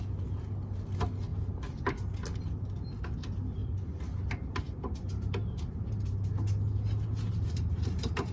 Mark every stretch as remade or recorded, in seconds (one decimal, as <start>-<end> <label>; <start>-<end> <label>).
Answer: 0.0-8.3 recorded